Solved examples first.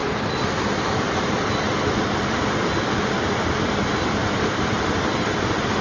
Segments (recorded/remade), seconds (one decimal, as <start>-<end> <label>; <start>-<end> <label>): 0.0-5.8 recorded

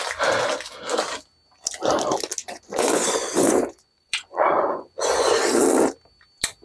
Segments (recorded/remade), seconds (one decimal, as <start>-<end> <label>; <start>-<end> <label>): 0.0-2.4 recorded; 2.4-5.4 remade; 5.4-6.6 recorded

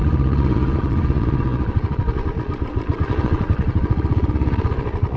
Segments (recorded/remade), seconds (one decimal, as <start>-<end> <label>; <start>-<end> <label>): 0.0-5.2 remade

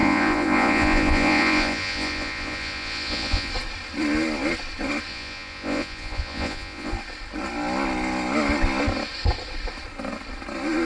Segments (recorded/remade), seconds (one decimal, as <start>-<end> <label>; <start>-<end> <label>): 0.0-3.5 remade; 3.5-5.1 recorded; 5.1-6.9 remade; 6.9-10.8 recorded

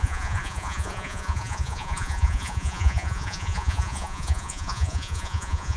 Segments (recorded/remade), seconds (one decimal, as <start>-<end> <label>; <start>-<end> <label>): 0.0-5.8 remade

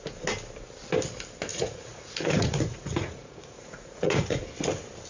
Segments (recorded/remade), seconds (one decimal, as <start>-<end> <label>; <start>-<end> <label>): 0.0-1.5 recorded; 1.5-4.5 remade; 4.5-5.1 recorded